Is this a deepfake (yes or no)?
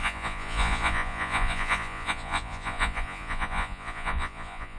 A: yes